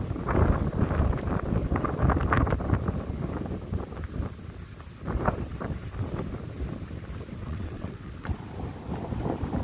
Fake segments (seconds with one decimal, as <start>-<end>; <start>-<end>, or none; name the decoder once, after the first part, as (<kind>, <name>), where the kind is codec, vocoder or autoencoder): 7.4-8.1 (vocoder, WaveNeXt)